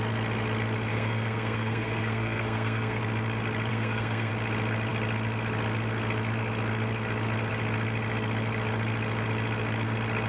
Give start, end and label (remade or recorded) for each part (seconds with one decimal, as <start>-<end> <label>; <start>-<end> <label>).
0.0-0.9 recorded; 0.9-3.0 remade; 3.0-3.7 recorded; 3.7-4.3 remade; 4.3-10.3 recorded